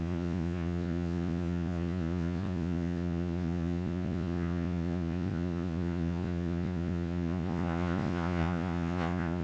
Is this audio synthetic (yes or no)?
yes